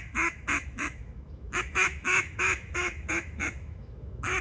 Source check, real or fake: fake